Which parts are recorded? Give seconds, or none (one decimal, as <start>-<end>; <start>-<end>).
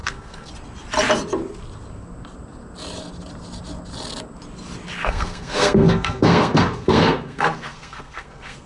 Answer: 0.5-5.0